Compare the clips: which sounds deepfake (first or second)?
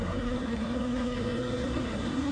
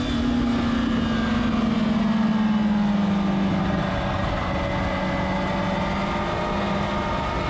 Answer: first